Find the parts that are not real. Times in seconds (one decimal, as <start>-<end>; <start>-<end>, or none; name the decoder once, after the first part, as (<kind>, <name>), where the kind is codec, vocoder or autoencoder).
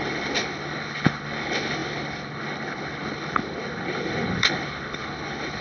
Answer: 0.0-5.6 (codec, HILCodec)